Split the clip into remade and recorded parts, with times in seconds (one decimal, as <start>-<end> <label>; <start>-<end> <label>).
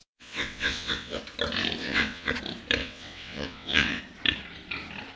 0.0-1.2 remade; 1.2-1.8 recorded; 1.8-2.3 remade; 2.3-2.8 recorded; 2.8-4.0 remade; 4.0-5.2 recorded